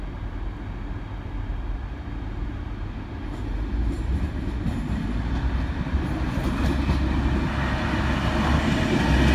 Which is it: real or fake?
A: real